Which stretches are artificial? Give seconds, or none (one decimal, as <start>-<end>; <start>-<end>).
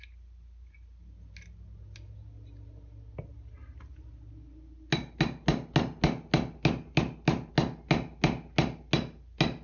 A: none